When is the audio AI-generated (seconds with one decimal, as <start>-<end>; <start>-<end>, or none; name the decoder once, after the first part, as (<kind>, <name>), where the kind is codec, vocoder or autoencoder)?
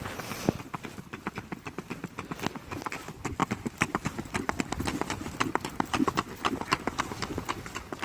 none